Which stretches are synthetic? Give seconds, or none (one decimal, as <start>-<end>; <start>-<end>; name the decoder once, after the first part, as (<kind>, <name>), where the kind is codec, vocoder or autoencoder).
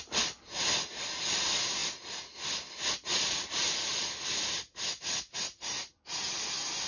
none